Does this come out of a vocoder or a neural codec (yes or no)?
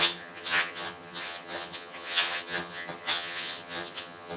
yes